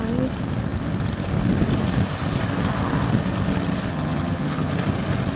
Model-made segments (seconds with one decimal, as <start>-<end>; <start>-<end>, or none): 3.9-4.7